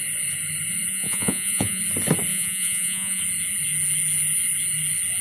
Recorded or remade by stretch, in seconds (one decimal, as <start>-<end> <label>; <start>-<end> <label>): 0.0-0.9 recorded; 0.9-1.8 remade; 1.8-2.3 recorded; 2.3-3.2 remade; 3.2-5.2 recorded